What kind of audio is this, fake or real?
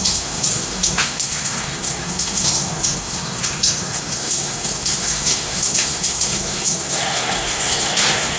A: fake